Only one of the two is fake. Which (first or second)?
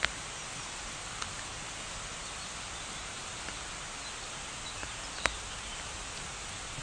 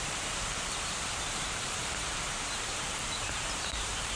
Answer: second